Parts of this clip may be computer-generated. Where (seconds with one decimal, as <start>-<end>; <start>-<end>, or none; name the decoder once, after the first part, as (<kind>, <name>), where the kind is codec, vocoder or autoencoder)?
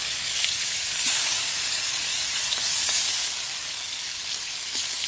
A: 0.0-5.1 (codec, DAC)